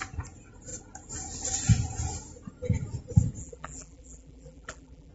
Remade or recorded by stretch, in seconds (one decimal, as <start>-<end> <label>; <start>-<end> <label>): 0.0-3.4 recorded; 3.4-5.1 remade